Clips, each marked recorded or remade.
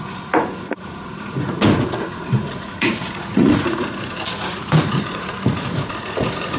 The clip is remade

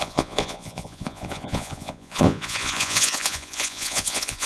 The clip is remade